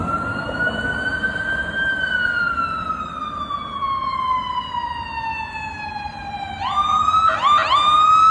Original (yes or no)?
yes